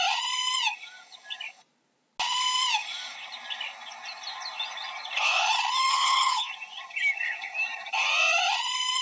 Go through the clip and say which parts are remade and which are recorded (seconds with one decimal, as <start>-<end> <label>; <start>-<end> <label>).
0.0-5.9 recorded; 5.9-6.5 remade; 6.5-9.0 recorded